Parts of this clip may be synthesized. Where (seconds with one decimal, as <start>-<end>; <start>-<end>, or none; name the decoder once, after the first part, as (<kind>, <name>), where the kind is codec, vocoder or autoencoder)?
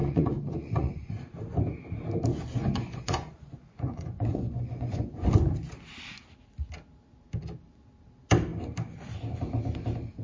0.0-1.2 (vocoder, Vocos); 2.3-5.3